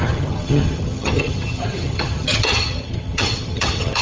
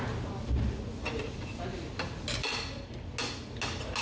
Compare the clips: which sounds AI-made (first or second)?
first